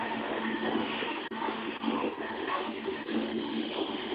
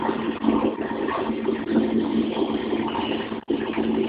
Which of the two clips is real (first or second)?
second